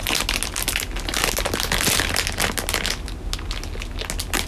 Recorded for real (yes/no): yes